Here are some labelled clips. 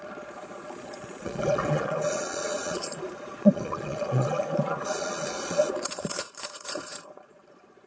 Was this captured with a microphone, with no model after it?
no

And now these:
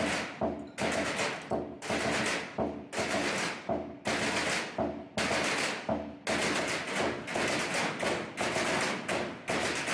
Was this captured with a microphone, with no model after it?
yes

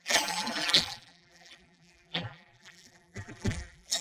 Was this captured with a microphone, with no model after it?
no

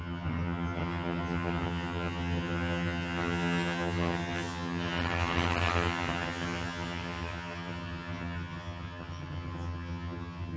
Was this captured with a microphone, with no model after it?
no